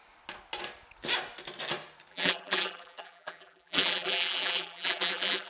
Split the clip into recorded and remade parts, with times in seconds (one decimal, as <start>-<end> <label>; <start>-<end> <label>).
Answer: 0.0-2.1 recorded; 2.1-5.5 remade